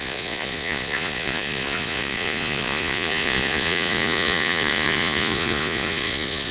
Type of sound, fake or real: fake